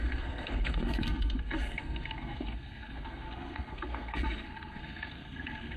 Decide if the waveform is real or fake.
fake